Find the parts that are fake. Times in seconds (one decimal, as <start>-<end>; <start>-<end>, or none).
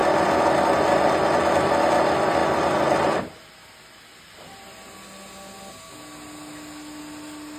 none